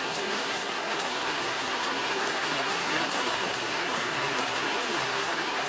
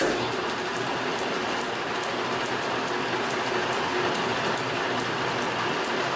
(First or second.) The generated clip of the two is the first